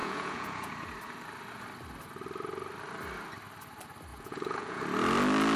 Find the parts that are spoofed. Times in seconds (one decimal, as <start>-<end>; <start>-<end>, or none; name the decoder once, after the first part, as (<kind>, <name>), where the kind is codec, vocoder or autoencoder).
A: 0.0-0.9 (vocoder, Vocos); 4.1-4.8